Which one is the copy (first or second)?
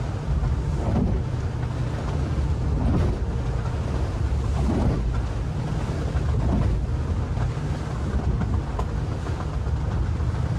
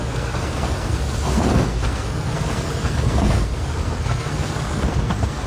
second